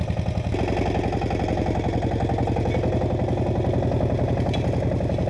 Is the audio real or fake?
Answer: real